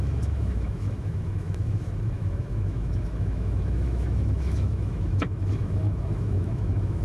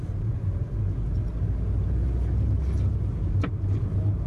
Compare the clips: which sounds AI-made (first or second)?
first